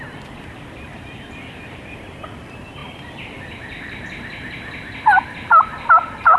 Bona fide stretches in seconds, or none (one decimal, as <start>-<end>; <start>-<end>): none